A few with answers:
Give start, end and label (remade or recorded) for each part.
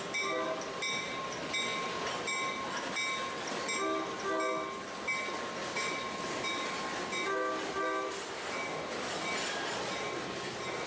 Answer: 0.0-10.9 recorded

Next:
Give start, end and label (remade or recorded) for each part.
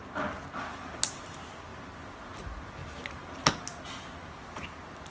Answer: 0.0-5.1 recorded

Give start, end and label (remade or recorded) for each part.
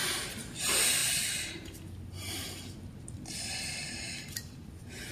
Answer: 0.0-0.6 remade; 0.6-5.1 recorded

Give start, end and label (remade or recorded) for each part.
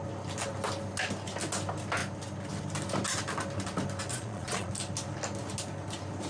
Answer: 0.0-4.1 recorded; 4.1-4.7 remade; 4.7-6.3 recorded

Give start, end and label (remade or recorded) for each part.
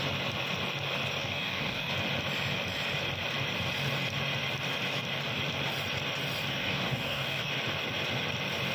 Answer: 0.0-1.2 recorded; 1.2-1.9 remade; 1.9-6.5 recorded; 6.5-7.5 remade; 7.5-8.7 recorded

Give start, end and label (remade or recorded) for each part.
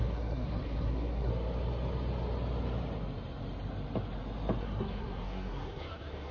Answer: 0.0-1.3 remade; 1.3-4.6 recorded; 4.6-6.3 remade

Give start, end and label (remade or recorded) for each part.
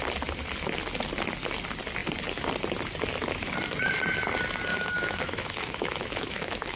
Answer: 0.0-4.7 recorded; 4.7-6.8 remade